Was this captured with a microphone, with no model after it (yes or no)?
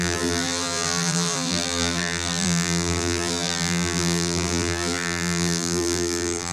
no